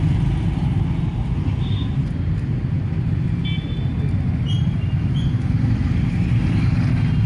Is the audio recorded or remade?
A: recorded